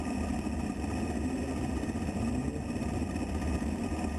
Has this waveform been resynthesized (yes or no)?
no